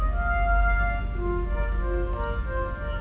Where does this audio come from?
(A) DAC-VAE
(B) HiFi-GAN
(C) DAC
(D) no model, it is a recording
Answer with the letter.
D